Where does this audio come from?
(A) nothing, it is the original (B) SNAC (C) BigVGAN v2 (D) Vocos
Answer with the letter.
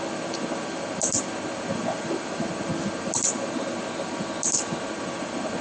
A